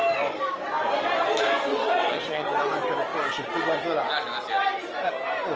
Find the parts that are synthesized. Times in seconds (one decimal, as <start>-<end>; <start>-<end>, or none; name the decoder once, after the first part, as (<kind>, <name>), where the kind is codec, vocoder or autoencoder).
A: 1.7-2.6 (vocoder, WaveNeXt)